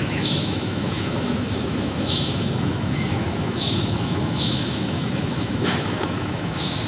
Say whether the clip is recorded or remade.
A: remade